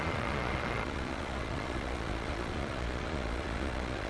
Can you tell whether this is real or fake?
fake